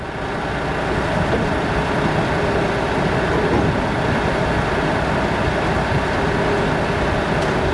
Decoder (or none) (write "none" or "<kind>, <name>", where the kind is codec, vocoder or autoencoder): none